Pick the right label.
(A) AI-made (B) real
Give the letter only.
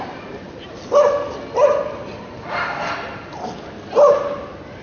B